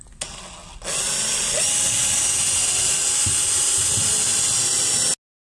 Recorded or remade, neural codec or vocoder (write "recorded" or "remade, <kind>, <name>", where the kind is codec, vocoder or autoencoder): recorded